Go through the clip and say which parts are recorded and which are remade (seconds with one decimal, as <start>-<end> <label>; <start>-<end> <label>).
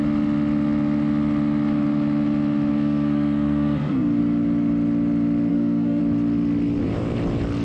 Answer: 0.0-2.7 recorded; 2.7-4.2 remade; 4.2-5.5 recorded; 5.5-6.0 remade; 6.0-7.6 recorded